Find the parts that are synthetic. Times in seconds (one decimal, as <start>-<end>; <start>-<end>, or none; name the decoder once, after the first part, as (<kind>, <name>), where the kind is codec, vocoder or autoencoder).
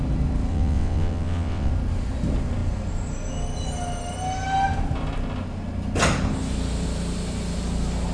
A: 0.5-1.7 (vocoder, WaveNeXt)